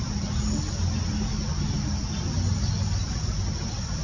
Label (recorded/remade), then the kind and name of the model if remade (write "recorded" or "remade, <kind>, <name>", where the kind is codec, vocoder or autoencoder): recorded